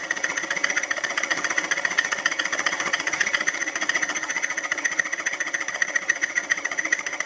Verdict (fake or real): fake